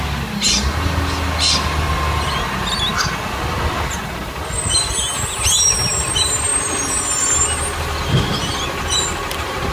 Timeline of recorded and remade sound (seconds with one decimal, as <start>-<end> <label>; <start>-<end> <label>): 0.0-9.7 recorded